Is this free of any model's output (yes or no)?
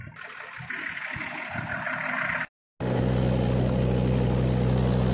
yes